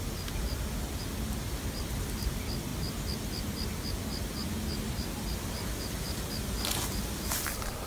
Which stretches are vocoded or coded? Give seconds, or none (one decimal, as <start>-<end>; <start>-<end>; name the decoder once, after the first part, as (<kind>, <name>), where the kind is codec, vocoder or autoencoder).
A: none